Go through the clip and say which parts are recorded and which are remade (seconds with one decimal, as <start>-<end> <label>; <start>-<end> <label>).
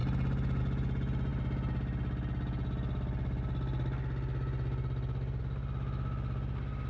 0.0-6.9 recorded